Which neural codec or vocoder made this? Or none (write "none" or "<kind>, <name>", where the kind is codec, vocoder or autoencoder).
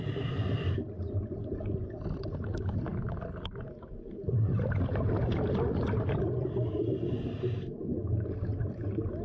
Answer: none